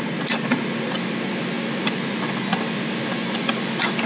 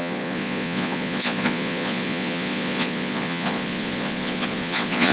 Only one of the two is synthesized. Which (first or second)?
second